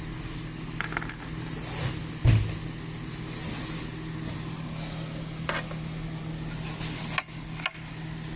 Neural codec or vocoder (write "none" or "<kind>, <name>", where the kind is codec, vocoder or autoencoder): none